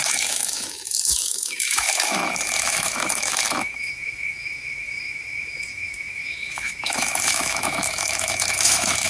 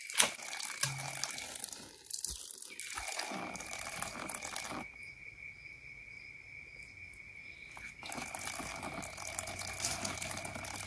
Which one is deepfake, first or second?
first